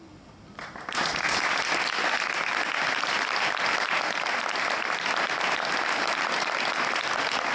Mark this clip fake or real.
fake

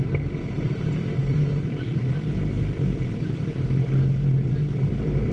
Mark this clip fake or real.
fake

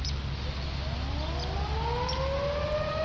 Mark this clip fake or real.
real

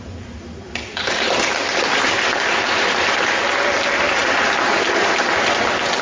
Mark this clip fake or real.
fake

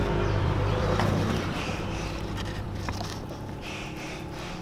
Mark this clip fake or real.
fake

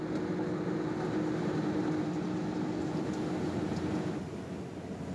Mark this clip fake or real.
real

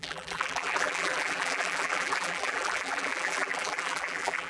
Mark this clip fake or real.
fake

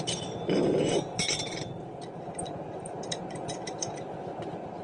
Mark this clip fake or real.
fake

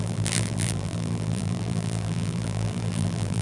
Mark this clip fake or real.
fake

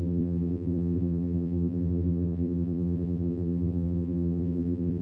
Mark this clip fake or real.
fake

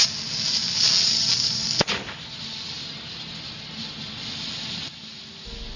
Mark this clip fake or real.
real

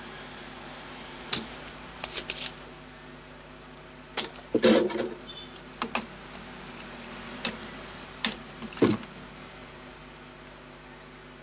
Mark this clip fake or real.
real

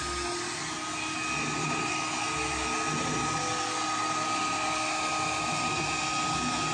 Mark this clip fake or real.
real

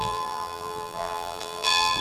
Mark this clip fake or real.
fake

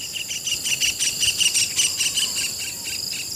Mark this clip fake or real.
real